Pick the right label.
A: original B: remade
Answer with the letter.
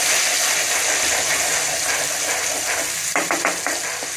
A